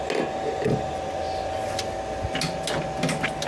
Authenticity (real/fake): real